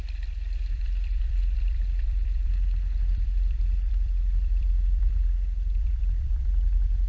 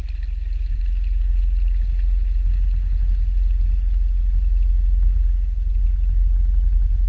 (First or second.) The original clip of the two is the second